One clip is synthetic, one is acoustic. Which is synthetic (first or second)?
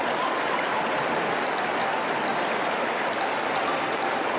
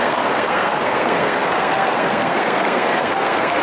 second